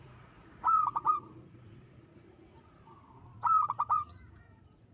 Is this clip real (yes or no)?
no